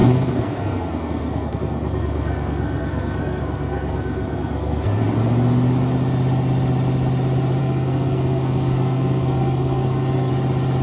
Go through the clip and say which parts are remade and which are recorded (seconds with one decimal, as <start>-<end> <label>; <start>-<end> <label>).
0.0-5.0 remade; 5.0-7.6 recorded; 7.6-10.3 remade; 10.3-10.8 recorded